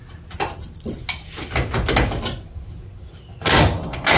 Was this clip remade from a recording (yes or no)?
no